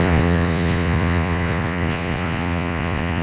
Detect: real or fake fake